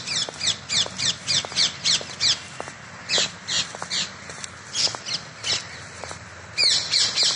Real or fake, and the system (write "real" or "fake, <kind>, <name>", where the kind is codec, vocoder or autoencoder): real